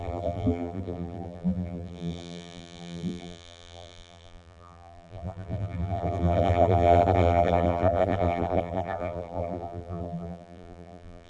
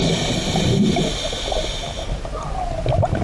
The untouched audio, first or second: second